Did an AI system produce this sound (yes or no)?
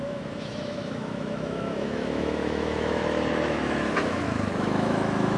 yes